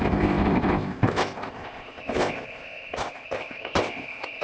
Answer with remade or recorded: remade